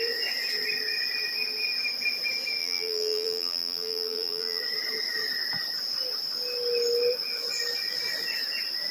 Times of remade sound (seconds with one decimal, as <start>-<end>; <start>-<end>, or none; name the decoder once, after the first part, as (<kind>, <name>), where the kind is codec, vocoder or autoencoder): 2.6-4.6 (vocoder, BigVGAN v2)